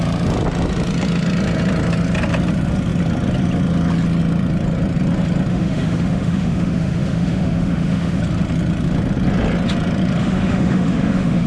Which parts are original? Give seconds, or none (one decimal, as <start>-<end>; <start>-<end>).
0.0-5.5; 8.2-10.2